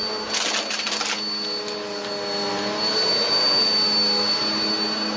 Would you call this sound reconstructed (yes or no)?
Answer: no